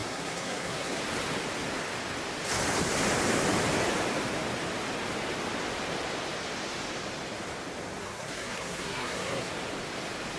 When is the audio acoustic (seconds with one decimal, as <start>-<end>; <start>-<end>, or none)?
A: 1.0-8.0; 9.5-10.4